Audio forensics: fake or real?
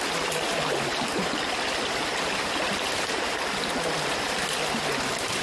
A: real